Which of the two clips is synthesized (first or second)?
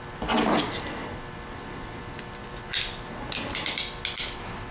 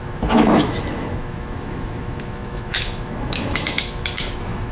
second